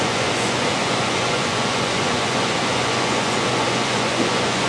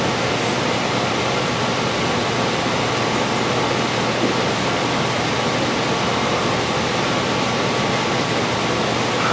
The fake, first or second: first